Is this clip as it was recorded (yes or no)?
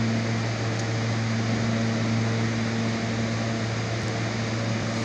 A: yes